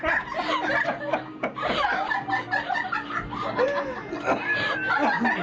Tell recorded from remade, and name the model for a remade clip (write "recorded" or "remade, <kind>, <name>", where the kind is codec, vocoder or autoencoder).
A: recorded